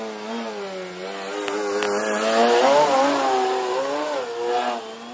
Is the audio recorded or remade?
recorded